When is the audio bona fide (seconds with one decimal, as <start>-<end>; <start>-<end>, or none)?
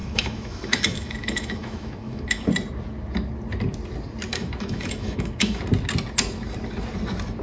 2.5-4.3; 5.6-7.4